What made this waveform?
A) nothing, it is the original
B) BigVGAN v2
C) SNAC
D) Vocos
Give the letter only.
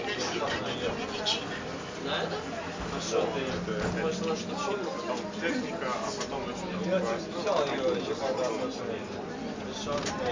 A